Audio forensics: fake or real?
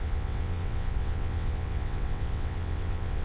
fake